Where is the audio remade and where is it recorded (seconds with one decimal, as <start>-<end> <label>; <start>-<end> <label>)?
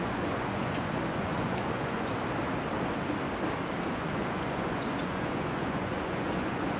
0.0-2.1 remade; 2.1-3.9 recorded; 3.9-6.8 remade